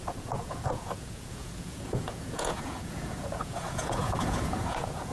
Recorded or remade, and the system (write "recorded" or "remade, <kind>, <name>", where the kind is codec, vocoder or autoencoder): remade, vocoder, Vocos